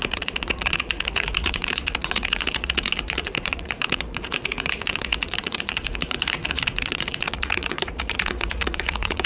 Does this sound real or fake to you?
fake